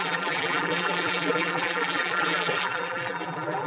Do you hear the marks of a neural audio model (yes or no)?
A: yes